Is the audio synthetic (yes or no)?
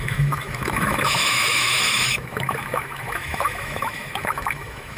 yes